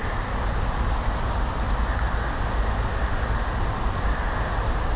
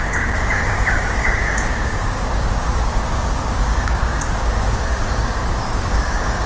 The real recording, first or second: first